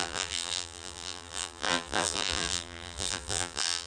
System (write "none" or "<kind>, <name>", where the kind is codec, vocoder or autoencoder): vocoder, BigVGAN v2